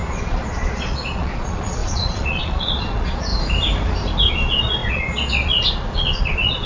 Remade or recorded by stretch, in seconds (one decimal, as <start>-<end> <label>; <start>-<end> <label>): 0.0-3.3 remade; 3.3-4.3 recorded; 4.3-6.7 remade